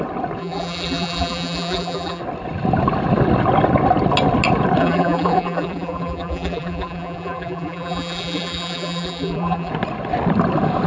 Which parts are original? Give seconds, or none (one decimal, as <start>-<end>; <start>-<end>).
0.0-0.4; 2.2-4.8; 9.7-10.9